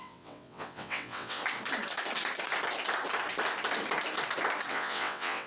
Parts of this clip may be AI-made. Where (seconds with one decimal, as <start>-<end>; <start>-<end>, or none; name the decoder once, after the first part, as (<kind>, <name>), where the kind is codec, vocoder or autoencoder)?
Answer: 0.0-1.4 (vocoder, WaveNeXt); 4.7-5.5